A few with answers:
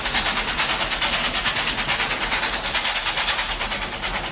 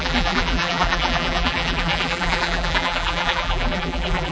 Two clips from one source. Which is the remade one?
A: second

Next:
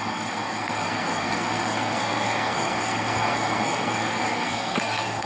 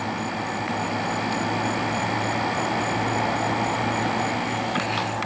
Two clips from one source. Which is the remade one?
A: first